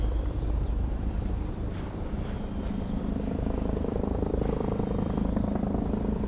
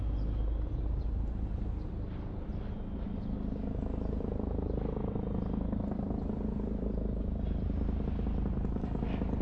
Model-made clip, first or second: first